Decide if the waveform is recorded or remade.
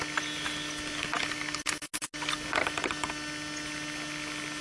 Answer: recorded